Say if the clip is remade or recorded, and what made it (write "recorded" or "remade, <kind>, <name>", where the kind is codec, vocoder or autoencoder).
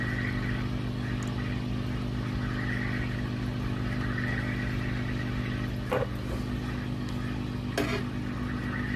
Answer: recorded